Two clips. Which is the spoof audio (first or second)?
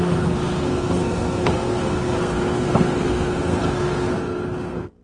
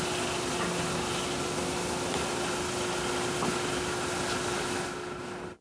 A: first